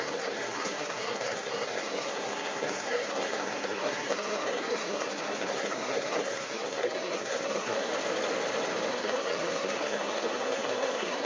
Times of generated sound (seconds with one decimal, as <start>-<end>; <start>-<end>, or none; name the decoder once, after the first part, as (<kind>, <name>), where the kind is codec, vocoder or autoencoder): 0.0-7.9 (codec, SNAC); 8.9-11.3